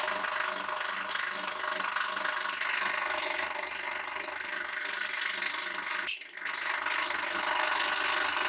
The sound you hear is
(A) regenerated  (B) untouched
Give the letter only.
B